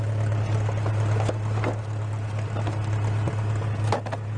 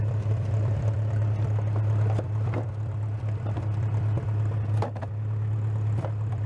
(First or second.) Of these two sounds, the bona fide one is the first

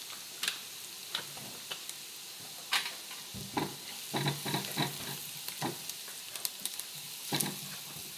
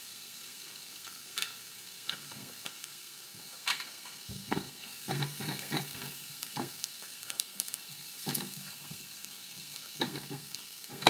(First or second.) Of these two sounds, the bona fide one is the first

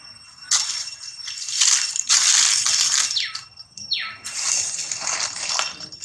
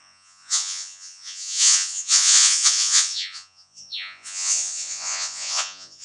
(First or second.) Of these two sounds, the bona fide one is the first